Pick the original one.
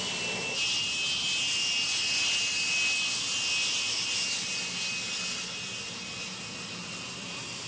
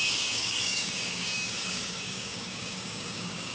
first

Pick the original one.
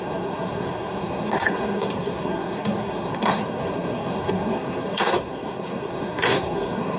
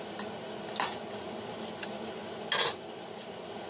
second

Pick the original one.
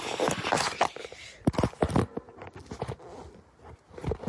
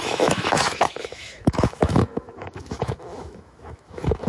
first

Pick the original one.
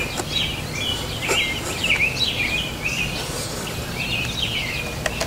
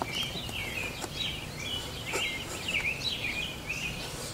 first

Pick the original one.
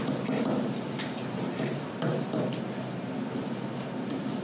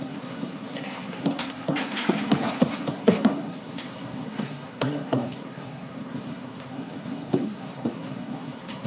first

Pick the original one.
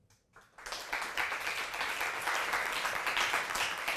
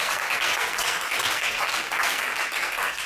first